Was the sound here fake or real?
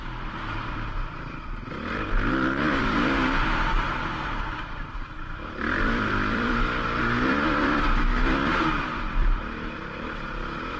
fake